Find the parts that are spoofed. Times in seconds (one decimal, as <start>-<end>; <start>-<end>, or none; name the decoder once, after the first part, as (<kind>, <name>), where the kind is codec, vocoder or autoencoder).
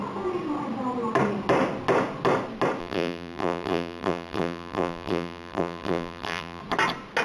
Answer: 2.8-6.6 (vocoder, BigVGAN v2)